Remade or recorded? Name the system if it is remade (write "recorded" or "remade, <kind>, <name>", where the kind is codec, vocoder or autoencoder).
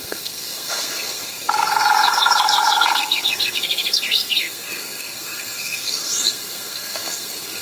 remade, codec, SNAC